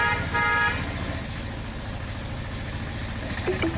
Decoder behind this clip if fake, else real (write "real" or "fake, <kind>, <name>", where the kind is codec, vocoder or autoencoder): real